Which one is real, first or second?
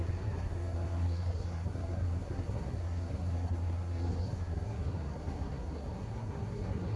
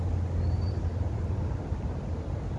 second